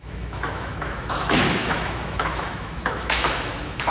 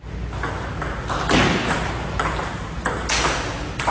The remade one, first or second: first